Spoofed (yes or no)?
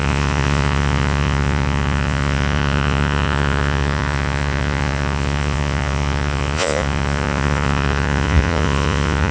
yes